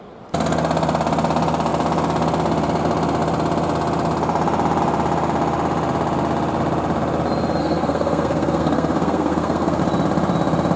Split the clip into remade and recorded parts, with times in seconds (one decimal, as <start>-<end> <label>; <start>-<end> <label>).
0.0-7.6 recorded; 7.6-9.8 remade; 9.8-10.8 recorded